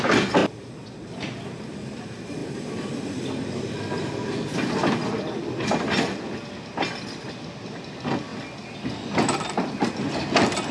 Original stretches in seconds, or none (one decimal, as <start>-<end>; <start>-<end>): 0.0-10.7